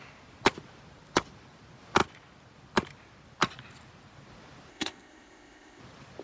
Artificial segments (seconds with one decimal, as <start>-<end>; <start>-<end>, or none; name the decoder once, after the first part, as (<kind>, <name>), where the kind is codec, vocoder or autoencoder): 4.7-5.8 (codec, ZipCodec)